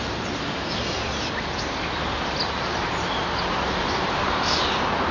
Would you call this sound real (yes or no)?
yes